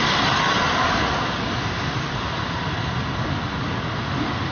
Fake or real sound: real